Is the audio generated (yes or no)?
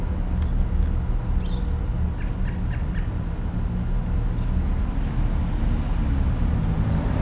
no